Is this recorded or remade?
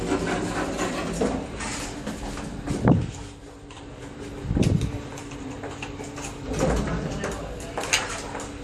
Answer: recorded